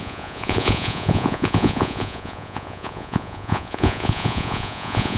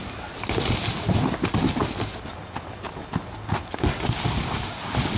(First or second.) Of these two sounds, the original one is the second